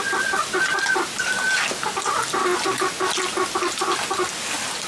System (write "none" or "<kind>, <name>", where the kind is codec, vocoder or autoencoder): none